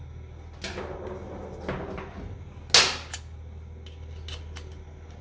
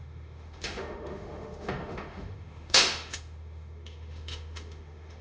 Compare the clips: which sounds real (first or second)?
first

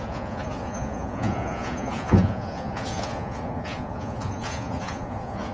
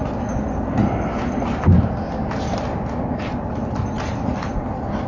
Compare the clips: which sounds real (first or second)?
second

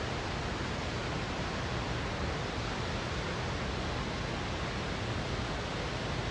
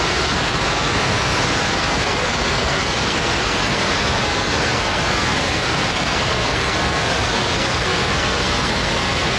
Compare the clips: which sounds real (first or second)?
first